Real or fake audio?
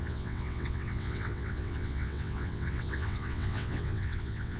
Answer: fake